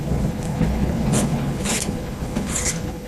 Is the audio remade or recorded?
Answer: remade